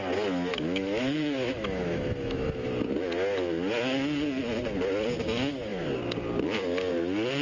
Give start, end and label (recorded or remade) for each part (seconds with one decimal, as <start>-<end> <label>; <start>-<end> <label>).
0.0-0.5 recorded; 0.5-2.7 remade; 2.7-7.4 recorded